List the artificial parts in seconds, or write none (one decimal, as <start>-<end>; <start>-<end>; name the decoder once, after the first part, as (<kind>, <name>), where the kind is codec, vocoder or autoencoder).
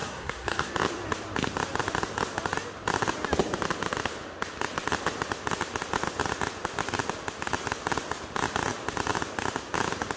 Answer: 0.0-0.7 (codec, SNAC)